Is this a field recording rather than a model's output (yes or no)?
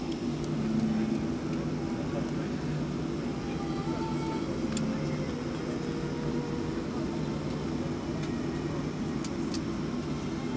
yes